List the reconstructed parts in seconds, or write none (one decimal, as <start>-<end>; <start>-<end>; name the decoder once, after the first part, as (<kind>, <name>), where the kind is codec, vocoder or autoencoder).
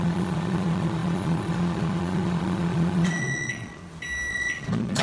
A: 0.0-3.8 (vocoder, Vocos); 4.3-5.0